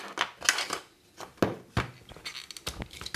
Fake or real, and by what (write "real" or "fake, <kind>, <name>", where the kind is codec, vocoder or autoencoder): real